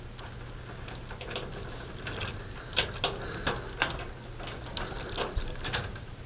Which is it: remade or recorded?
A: recorded